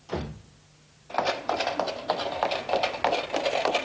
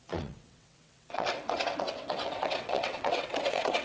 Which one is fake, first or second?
second